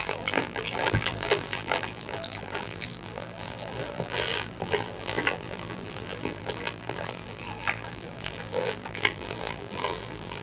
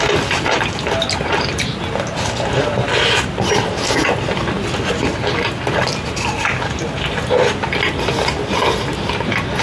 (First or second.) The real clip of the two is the second